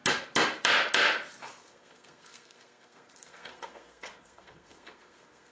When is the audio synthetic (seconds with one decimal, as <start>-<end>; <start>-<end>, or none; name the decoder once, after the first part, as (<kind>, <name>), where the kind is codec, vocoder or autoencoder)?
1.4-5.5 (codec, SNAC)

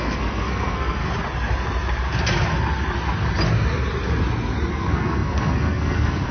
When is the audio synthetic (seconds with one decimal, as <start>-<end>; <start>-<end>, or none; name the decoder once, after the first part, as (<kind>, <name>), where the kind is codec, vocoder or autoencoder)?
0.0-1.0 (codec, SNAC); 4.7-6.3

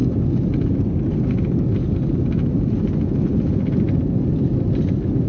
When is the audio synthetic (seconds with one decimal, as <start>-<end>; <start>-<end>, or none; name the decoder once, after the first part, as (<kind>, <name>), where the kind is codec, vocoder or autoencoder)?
none